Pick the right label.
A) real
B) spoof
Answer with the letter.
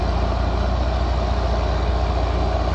A